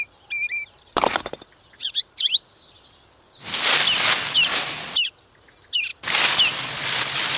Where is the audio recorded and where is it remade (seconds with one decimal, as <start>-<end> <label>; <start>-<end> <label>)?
0.0-7.4 recorded